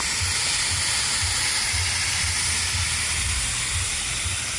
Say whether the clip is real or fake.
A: real